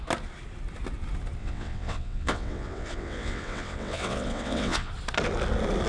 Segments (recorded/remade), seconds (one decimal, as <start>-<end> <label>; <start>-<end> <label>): 0.0-1.4 recorded; 1.4-4.9 remade; 4.9-5.9 recorded

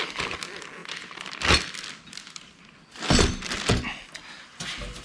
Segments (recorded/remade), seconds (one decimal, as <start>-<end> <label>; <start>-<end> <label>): 0.0-5.0 recorded

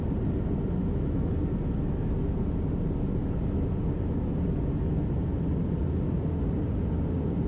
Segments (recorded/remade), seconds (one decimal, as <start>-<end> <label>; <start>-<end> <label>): 0.0-0.8 recorded; 0.8-1.5 remade; 1.5-3.2 recorded; 3.2-3.7 remade; 3.7-7.5 recorded

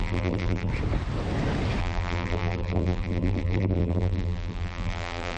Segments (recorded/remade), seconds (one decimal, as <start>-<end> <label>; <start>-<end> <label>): 0.0-0.7 remade; 0.7-1.8 recorded; 1.8-5.4 remade

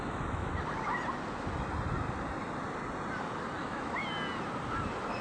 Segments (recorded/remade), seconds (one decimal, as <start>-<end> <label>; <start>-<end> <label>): 0.0-0.5 remade; 0.5-3.6 recorded; 3.6-4.0 remade; 4.0-5.2 recorded